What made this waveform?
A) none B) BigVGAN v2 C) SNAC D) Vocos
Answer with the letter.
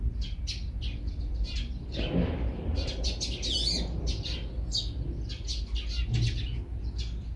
A